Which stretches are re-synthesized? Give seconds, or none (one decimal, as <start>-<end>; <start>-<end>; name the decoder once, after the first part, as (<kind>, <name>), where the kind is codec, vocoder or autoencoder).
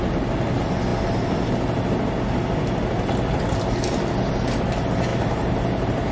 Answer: 5.1-6.1 (vocoder, BigVGAN v2)